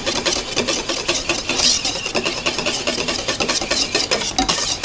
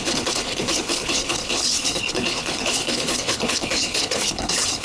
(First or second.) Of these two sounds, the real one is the first